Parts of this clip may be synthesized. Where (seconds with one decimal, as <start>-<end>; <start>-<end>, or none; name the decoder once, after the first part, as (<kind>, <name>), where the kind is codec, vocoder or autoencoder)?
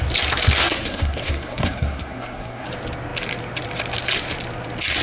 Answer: 0.6-2.7 (codec, SNAC)